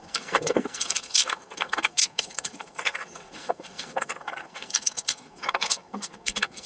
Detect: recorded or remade remade